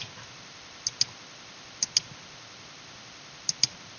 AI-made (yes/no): no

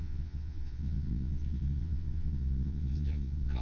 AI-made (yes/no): yes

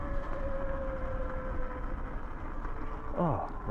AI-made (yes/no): no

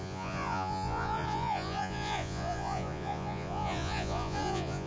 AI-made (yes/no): yes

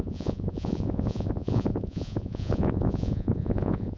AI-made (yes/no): yes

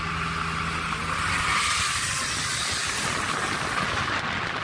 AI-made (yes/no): no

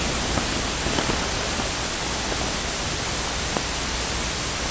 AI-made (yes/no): no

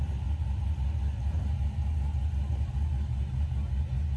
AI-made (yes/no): no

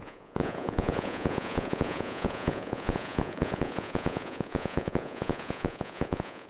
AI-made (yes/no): yes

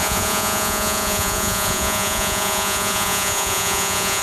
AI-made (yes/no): yes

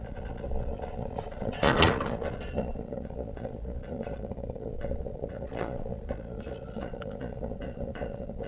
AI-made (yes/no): yes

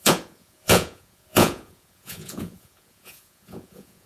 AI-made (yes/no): yes